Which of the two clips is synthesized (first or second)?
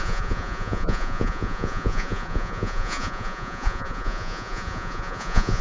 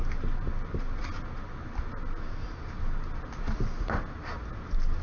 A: first